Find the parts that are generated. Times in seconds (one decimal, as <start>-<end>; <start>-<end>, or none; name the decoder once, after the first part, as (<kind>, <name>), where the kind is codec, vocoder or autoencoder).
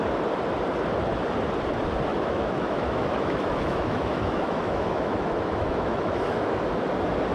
2.1-6.5 (autoencoder, DAC-VAE)